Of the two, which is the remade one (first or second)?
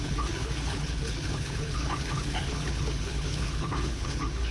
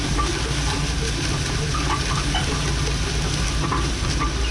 first